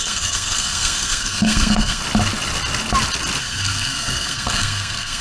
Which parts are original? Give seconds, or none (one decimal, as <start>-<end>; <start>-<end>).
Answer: 2.0-3.4